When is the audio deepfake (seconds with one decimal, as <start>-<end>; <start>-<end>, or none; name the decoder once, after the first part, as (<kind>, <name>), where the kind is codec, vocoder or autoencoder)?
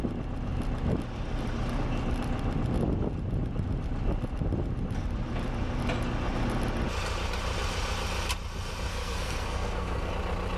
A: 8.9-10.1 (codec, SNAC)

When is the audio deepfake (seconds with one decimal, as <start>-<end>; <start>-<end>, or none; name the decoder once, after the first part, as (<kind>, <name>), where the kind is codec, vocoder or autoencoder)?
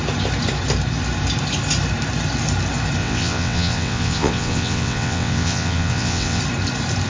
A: 3.0-6.4 (vocoder, WaveNeXt)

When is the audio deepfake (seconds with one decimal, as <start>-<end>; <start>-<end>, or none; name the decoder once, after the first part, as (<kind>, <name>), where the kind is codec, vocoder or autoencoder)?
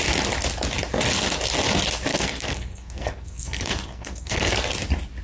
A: 2.1-4.5 (codec, SNAC)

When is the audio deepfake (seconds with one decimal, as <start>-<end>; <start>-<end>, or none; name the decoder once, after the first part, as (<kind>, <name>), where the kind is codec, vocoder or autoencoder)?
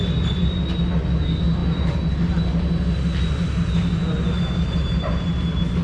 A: none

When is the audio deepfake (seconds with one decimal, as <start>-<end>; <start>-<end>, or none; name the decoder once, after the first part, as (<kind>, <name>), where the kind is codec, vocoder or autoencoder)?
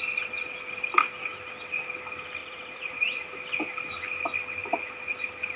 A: 2.4-3.2 (vocoder, Vocos)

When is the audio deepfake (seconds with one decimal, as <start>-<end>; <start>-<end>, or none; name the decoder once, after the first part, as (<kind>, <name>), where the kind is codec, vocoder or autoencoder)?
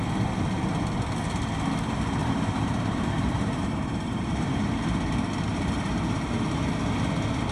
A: 2.2-4.8 (vocoder, BigVGAN v2); 5.5-6.6